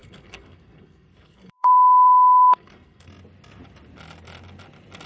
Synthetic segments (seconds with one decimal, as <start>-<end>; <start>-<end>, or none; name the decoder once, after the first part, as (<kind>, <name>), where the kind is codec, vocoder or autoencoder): 0.0-3.1 (codec, SNAC)